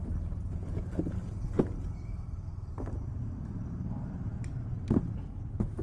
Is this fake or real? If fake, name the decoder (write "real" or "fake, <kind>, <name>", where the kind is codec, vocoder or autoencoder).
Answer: fake, vocoder, BigVGAN v2